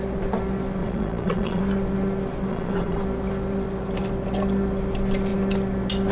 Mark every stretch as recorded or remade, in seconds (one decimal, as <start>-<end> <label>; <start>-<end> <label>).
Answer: 0.0-0.8 recorded; 0.8-1.6 remade; 1.6-2.5 recorded; 2.5-3.0 remade; 3.0-6.1 recorded